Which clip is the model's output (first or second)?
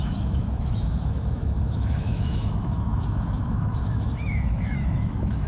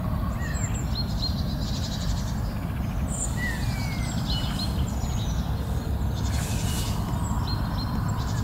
first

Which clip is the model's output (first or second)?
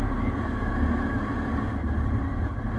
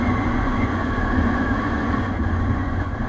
second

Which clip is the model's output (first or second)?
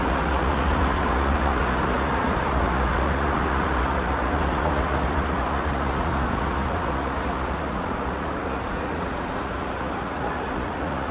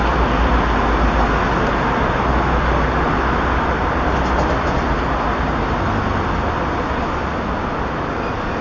first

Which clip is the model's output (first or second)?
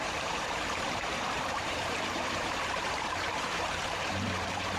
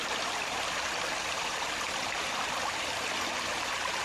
first